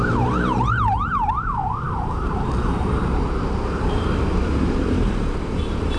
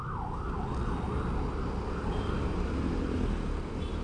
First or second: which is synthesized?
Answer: first